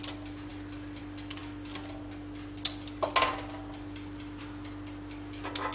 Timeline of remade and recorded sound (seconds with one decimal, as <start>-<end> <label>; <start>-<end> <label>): 0.0-5.7 recorded